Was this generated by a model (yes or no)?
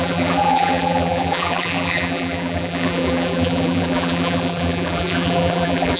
yes